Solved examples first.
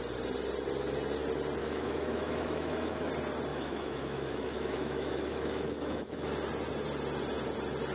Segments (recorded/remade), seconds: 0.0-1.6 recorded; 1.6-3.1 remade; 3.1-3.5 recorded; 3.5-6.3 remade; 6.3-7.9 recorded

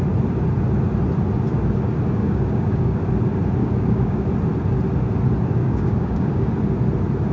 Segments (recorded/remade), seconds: 0.0-2.2 recorded; 2.2-3.0 remade; 3.0-3.6 recorded; 3.6-4.3 remade; 4.3-5.6 recorded; 5.6-6.5 remade; 6.5-7.3 recorded

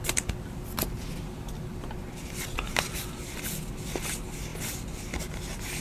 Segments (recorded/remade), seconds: 0.0-5.8 recorded

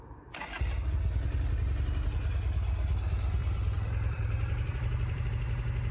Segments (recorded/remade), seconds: 0.0-3.4 recorded; 3.4-5.3 remade; 5.3-5.9 recorded

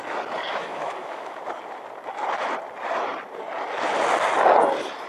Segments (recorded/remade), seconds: 0.0-0.5 recorded; 0.5-1.4 remade; 1.4-5.1 recorded

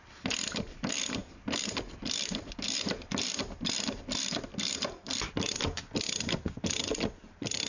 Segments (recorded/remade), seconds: 0.0-1.2 remade; 1.2-1.8 recorded; 1.8-7.7 remade

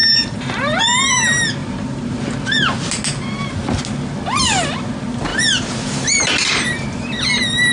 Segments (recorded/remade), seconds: 0.0-0.8 remade; 0.8-1.6 recorded; 1.6-2.2 remade; 2.2-5.3 recorded; 5.3-7.1 remade; 7.1-7.7 recorded

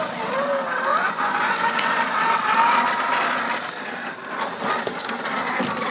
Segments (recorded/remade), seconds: 0.0-0.9 recorded; 0.9-2.0 remade; 2.0-5.9 recorded